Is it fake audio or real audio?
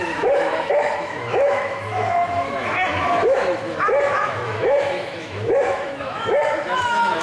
fake